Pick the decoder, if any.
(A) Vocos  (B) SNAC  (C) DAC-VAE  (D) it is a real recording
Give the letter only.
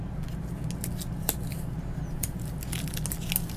D